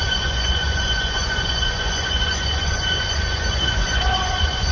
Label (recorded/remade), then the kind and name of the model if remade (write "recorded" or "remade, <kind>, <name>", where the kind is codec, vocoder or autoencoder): remade, vocoder, Vocos